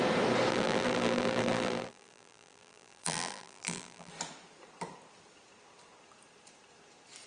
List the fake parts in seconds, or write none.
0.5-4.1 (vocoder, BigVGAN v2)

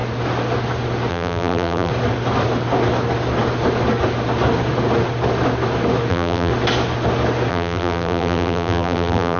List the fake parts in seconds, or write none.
1.1-1.9 (vocoder, BigVGAN v2); 6.1-6.5; 7.5-9.4

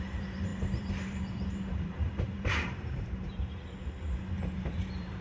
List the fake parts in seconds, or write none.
0.0-5.2 (vocoder, BigVGAN v2)

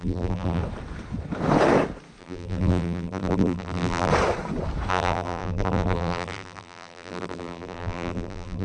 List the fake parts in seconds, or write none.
0.0-0.6 (vocoder, BigVGAN v2); 2.2-4.1; 4.9-8.6

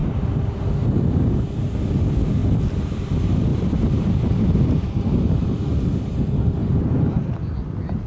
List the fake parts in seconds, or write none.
2.4-3.0 (vocoder, BigVGAN v2); 3.5-5.0

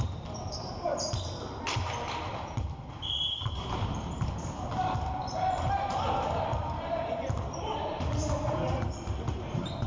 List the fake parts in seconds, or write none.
0.0-0.9 (vocoder, BigVGAN v2); 2.3-9.9